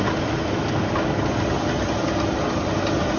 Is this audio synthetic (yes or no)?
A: no